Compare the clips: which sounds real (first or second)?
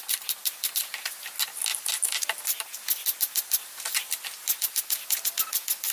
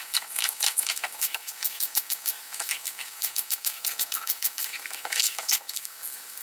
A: first